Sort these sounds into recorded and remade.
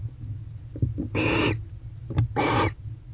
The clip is recorded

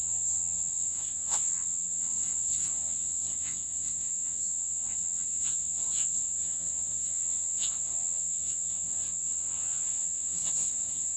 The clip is remade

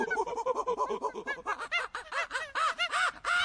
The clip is recorded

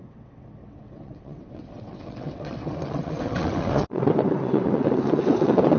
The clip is remade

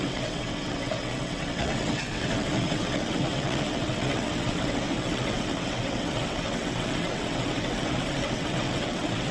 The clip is remade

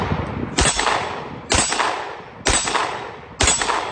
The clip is recorded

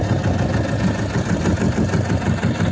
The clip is recorded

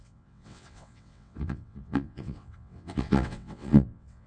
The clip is remade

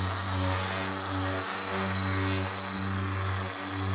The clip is recorded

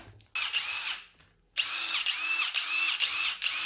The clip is recorded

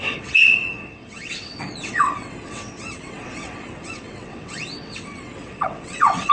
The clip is remade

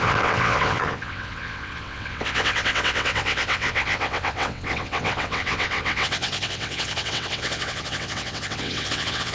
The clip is remade